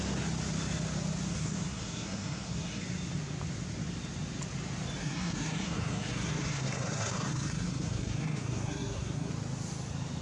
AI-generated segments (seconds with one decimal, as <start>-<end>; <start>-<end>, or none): 1.3-2.8; 5.0-9.3